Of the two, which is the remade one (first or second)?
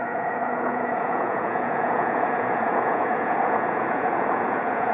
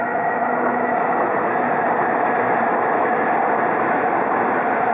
first